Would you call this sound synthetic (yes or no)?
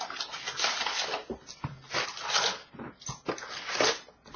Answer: no